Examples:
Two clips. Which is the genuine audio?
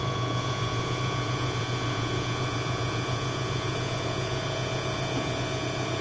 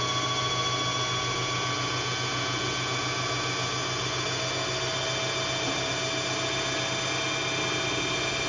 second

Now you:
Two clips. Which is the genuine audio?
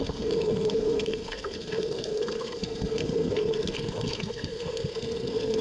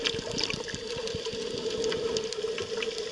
second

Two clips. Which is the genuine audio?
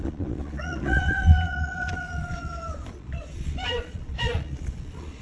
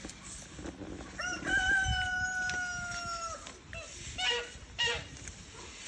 second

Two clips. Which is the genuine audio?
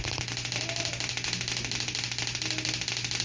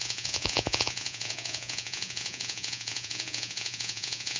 first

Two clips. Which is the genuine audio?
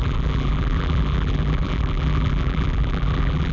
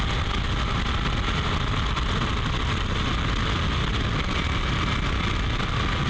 second